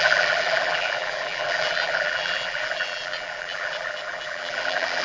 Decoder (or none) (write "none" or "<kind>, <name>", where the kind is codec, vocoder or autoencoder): vocoder, BigVGAN v2